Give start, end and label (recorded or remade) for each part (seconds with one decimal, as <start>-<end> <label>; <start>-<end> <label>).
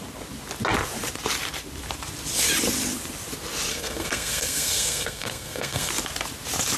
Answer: 0.0-3.7 recorded; 3.7-5.9 remade; 5.9-6.8 recorded